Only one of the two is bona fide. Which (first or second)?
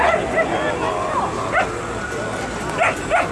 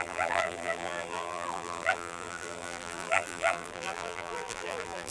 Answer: first